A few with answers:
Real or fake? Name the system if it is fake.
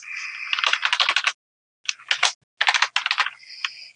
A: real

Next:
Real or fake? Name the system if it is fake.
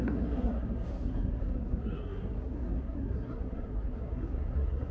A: fake, codec, SNAC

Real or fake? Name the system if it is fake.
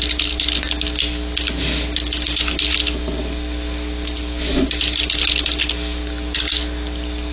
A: real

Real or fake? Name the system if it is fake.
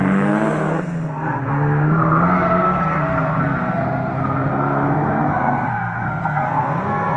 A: fake, codec, SNAC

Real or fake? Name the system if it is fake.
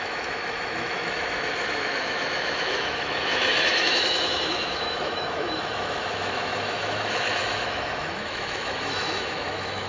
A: fake, autoencoder, DAC-VAE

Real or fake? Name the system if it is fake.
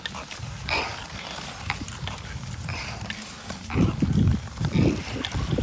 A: real